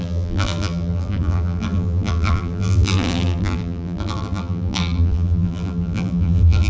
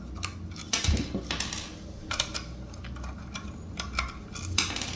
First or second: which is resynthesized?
first